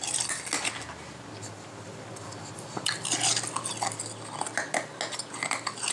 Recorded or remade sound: recorded